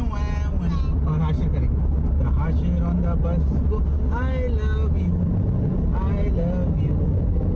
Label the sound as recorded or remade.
recorded